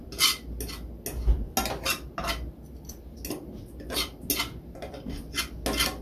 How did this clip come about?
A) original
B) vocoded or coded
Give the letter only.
A